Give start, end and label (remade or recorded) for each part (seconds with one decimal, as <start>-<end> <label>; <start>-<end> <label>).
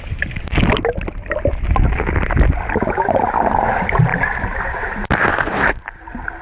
0.0-6.4 recorded